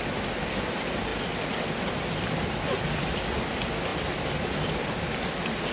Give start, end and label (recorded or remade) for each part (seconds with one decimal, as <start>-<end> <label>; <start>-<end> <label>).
0.0-5.7 recorded